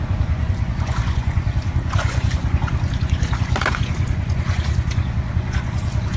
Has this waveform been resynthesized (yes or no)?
yes